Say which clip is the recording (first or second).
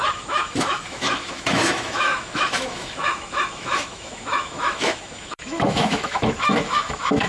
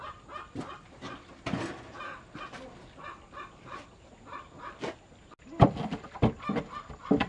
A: second